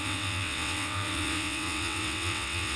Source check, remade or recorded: remade